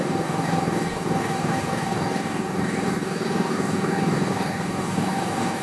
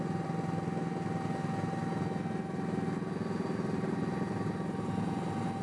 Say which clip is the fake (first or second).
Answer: first